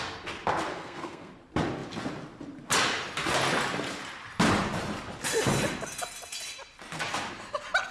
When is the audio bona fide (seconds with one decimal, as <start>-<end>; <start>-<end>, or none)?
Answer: 0.0-0.7; 1.3-7.9